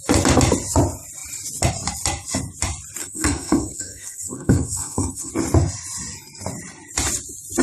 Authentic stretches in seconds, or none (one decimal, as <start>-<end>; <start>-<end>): 0.0-3.0; 5.3-7.6